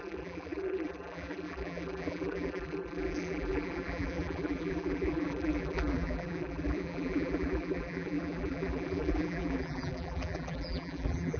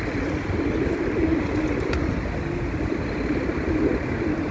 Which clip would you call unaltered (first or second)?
second